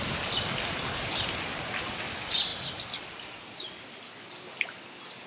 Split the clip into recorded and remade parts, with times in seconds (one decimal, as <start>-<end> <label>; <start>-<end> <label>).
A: 0.0-5.3 recorded